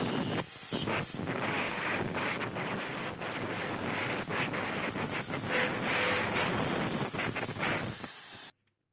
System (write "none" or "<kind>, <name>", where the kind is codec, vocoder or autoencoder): none